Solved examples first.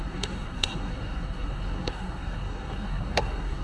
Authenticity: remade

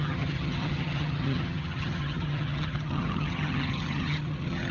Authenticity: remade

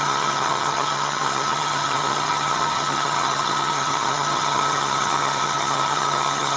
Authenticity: remade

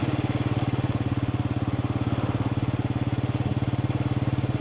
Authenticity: recorded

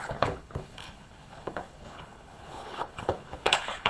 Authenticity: remade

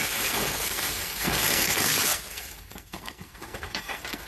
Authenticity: remade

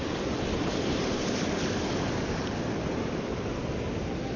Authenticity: recorded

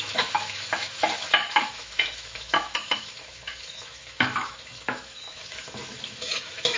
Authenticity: remade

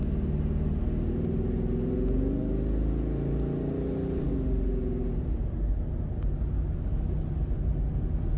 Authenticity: recorded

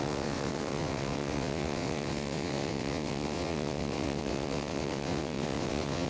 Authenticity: remade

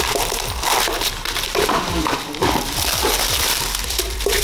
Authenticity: remade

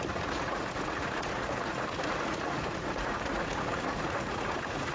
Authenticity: remade